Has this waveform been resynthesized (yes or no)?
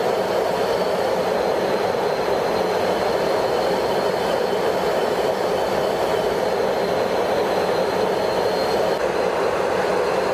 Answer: no